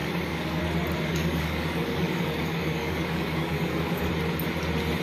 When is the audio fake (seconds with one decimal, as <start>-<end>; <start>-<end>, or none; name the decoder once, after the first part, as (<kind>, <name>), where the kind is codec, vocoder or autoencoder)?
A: 0.0-0.6 (codec, DAC); 1.1-4.1